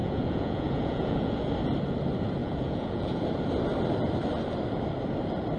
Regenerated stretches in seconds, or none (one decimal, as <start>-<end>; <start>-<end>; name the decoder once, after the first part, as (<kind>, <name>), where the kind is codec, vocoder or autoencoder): 0.0-1.5 (vocoder, Vocos); 2.4-3.2

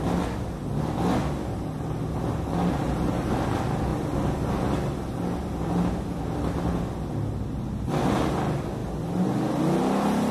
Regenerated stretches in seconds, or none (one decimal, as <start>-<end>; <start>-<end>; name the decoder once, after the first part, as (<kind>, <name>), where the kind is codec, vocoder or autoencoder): 8.8-9.6 (vocoder, BigVGAN v2)

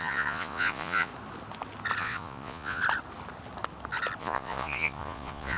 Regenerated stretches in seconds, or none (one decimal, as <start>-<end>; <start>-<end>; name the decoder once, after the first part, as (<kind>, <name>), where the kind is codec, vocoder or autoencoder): 0.0-1.1 (vocoder, Vocos); 2.0-2.8; 4.2-5.6